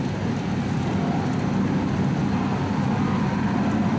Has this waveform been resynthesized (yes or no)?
no